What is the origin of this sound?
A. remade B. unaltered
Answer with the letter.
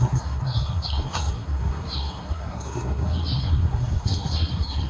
A